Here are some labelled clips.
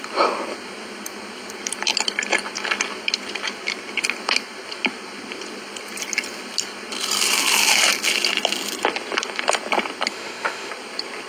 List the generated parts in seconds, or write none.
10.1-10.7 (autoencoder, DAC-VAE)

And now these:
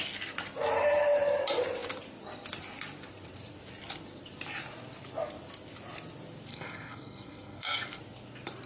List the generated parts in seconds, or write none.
6.5-8.0 (codec, SNAC)

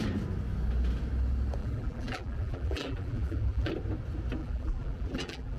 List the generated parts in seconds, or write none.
1.6-3.7 (vocoder, BigVGAN v2); 4.4-5.6